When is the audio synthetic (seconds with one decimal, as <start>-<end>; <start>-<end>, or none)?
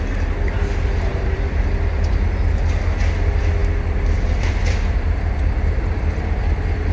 1.1-1.9; 3.6-5.9